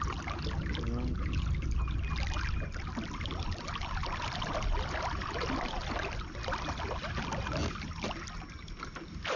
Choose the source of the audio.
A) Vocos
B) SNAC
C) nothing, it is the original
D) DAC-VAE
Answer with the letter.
C